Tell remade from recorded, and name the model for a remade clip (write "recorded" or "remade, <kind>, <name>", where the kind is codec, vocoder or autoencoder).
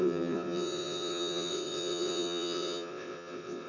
remade, vocoder, WaveNeXt